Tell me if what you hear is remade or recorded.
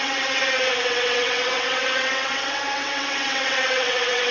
remade